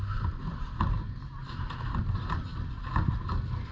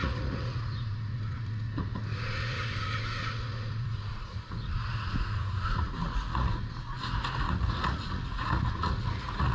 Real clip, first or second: first